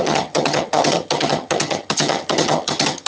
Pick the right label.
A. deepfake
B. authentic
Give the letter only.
A